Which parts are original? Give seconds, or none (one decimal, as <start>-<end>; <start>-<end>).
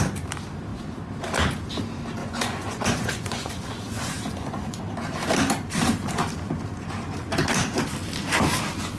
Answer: 0.0-2.2; 4.8-9.0